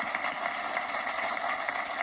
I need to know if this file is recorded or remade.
recorded